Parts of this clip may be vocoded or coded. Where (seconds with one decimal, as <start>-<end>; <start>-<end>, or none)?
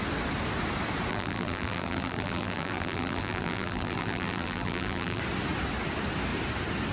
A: 1.1-5.2